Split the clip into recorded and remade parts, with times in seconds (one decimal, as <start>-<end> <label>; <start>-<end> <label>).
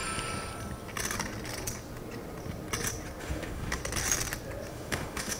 0.0-3.2 recorded; 3.2-3.8 remade; 3.8-4.7 recorded; 4.7-5.4 remade